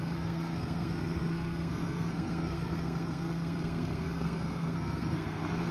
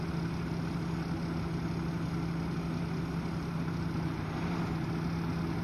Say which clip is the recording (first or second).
second